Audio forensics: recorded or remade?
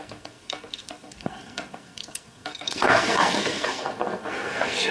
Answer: remade